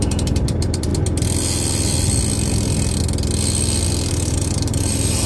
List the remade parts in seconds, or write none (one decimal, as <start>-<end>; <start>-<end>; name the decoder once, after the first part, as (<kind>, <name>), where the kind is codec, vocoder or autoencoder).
0.0-0.9 (vocoder, BigVGAN v2); 4.1-5.3